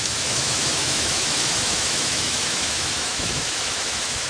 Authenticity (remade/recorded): remade